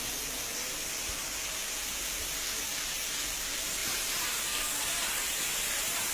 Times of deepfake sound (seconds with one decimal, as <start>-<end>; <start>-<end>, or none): 3.8-6.1